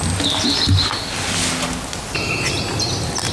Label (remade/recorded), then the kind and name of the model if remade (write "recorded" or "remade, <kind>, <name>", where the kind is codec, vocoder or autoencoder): recorded